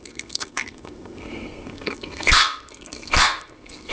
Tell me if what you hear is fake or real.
fake